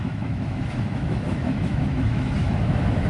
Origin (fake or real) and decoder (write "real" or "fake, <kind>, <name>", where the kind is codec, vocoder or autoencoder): fake, autoencoder, DAC-VAE